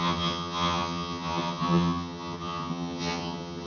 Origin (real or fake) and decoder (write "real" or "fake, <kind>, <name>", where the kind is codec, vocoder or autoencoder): fake, vocoder, HiFi-GAN